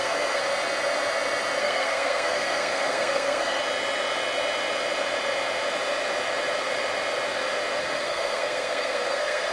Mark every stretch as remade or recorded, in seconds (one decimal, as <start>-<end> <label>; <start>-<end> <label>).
0.0-0.4 remade; 0.4-1.6 recorded; 1.6-3.6 remade; 3.6-7.8 recorded; 7.8-9.5 remade